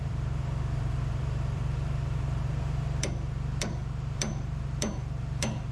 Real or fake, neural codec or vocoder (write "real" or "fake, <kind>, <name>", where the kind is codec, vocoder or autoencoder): fake, vocoder, BigVGAN v2